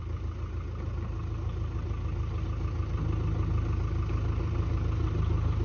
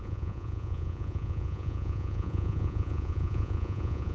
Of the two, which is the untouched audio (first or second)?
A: first